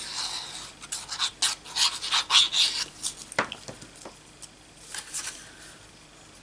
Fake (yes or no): no